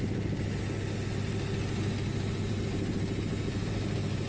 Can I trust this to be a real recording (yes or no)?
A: yes